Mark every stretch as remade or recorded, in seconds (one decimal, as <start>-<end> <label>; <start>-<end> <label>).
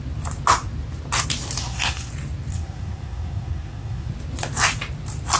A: 0.0-1.6 recorded; 1.6-2.1 remade; 2.1-2.5 recorded; 2.5-4.1 remade; 4.1-5.4 recorded